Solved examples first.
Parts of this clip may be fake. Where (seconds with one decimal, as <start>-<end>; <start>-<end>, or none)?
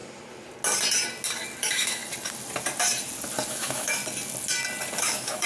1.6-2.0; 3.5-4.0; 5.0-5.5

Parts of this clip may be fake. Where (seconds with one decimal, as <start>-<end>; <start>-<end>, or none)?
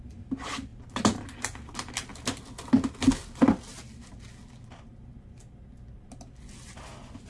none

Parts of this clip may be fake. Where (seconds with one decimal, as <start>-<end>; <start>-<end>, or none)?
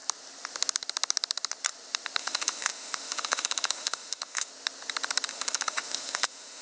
2.2-4.5; 5.3-6.6